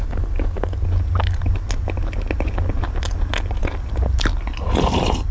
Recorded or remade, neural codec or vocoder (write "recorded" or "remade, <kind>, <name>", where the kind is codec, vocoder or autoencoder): recorded